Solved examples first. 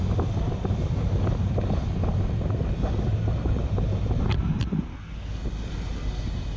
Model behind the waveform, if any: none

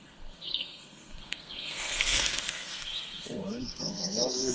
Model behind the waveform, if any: codec, SNAC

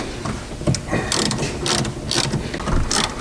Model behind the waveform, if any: none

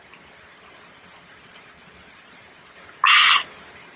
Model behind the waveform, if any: none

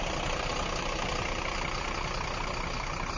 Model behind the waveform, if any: none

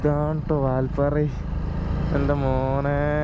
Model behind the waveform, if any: none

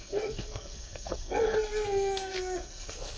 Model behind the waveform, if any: codec, SNAC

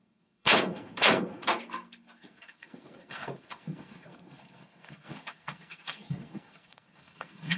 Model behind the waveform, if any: codec, SNAC